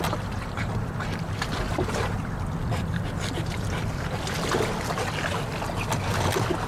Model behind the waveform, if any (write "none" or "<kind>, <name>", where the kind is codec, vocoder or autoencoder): none